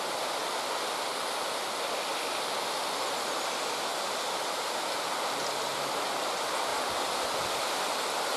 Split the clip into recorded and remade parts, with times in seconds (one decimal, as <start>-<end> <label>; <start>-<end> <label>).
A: 0.0-8.4 recorded